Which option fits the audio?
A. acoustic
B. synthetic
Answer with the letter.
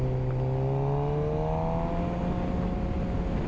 A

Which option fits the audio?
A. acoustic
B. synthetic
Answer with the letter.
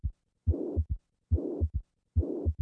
A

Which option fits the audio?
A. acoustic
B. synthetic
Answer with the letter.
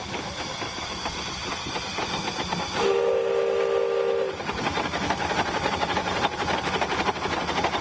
A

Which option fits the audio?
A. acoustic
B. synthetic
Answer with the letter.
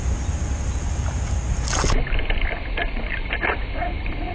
A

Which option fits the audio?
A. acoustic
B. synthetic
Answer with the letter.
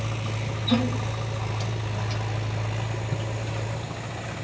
A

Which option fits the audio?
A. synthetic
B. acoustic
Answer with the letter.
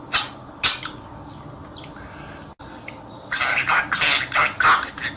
B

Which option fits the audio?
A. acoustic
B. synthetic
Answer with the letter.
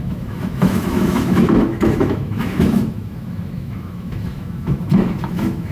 B